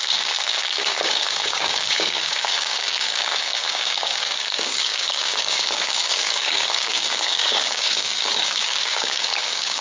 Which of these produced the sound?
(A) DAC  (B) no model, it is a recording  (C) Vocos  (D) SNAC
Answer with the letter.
A